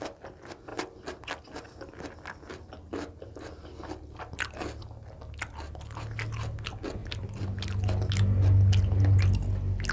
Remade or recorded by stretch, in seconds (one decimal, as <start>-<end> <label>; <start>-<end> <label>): 0.0-9.9 recorded